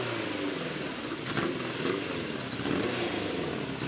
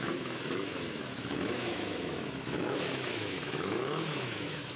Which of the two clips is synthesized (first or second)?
second